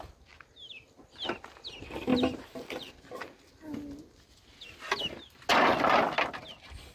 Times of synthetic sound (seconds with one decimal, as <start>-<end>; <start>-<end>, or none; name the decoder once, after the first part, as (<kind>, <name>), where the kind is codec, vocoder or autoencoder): 2.1-2.9 (vocoder, BigVGAN v2)

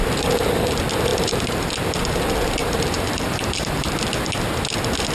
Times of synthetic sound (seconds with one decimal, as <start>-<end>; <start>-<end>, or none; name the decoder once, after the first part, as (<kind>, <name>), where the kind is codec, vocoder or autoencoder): 1.1-1.7 (vocoder, BigVGAN v2); 2.6-3.9

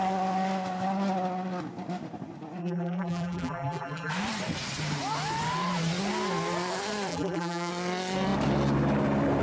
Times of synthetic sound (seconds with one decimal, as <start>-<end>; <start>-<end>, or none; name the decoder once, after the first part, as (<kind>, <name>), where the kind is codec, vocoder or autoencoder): 2.6-4.1 (vocoder, BigVGAN v2); 7.1-7.7

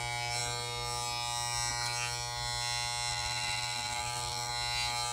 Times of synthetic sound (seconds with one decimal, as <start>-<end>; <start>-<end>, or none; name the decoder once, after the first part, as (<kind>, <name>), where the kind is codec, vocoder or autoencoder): 3.1-4.5 (vocoder, BigVGAN v2)

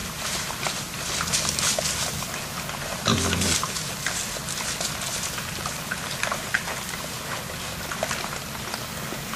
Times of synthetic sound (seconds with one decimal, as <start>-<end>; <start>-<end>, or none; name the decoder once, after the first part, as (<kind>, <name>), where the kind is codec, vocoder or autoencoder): 0.0-0.5 (vocoder, BigVGAN v2)

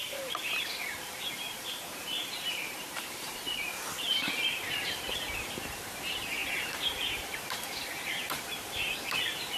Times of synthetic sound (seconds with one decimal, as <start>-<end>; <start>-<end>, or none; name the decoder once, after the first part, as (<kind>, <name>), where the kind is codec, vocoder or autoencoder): 0.0-9.6 (vocoder, BigVGAN v2)

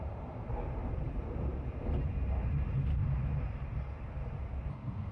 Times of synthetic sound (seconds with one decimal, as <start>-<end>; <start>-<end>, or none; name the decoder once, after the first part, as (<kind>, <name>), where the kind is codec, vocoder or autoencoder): 0.8-3.9 (vocoder, BigVGAN v2)